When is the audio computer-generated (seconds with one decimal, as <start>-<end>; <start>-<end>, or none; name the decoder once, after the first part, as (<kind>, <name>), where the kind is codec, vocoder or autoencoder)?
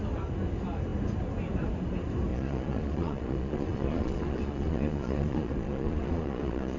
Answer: 2.3-6.8 (vocoder, Vocos)